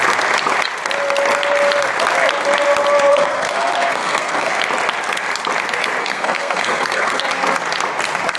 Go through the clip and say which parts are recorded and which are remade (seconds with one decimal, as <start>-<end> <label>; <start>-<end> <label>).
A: 0.0-3.1 recorded; 3.1-4.5 remade; 4.5-6.0 recorded; 6.0-7.2 remade; 7.2-8.4 recorded